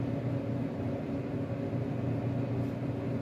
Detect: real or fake real